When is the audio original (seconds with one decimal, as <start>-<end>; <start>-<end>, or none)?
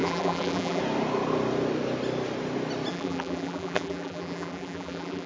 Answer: 0.8-2.9